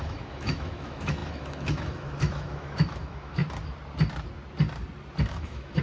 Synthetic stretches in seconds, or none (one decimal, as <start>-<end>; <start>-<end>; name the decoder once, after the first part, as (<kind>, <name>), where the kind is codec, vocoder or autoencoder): 0.0-3.4 (autoencoder, DAC-VAE); 5.2-5.8